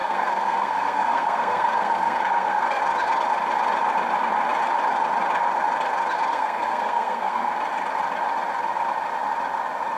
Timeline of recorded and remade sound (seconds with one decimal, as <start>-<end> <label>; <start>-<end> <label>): 0.0-2.8 remade; 2.8-6.3 recorded; 6.3-7.5 remade; 7.5-10.0 recorded